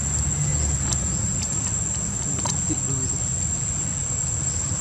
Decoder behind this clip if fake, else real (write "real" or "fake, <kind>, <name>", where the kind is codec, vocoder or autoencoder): real